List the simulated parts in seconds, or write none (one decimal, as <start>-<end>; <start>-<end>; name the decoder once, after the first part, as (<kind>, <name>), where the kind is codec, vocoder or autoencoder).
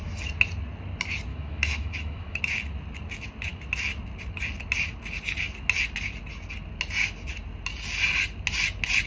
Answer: 1.3-2.4 (autoencoder, DAC-VAE)